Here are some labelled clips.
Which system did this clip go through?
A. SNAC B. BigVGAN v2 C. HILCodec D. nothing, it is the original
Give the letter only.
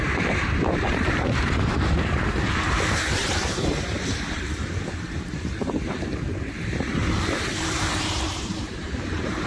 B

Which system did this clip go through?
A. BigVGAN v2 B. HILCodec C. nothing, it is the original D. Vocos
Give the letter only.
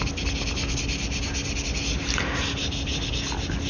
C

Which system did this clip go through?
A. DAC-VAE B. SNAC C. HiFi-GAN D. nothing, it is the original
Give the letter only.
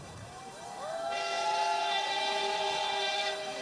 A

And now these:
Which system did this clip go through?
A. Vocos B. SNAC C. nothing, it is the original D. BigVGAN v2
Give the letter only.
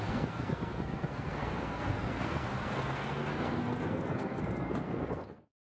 B